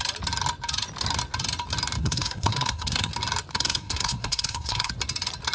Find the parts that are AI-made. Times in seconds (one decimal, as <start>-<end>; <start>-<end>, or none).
2.0-3.1; 3.5-4.9